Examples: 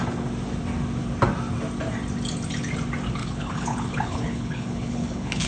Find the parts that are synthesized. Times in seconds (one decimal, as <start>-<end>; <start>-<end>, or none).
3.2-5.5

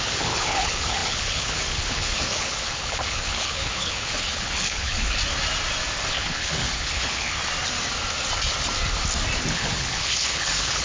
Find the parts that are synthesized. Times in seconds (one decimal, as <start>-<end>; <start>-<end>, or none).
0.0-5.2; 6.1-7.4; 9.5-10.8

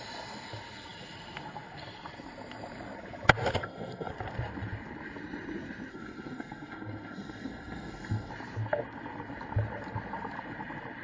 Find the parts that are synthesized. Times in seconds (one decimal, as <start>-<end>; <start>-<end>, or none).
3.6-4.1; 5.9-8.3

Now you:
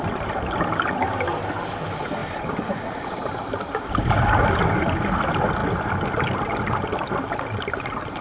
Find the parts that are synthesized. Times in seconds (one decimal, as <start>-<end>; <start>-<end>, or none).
2.2-4.1

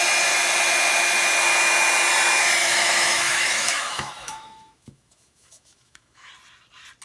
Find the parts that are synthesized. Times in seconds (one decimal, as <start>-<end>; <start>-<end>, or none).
2.6-6.3

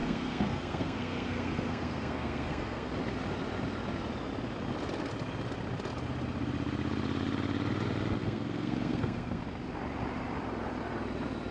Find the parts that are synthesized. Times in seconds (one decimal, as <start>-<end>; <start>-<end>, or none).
0.0-2.9; 8.2-9.4

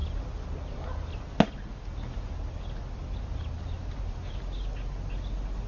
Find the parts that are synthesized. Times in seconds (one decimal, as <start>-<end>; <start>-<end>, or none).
none